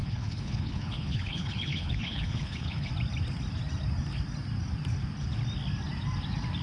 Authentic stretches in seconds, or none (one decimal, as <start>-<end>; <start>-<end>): 2.9-6.6